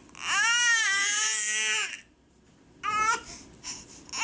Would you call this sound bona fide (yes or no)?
yes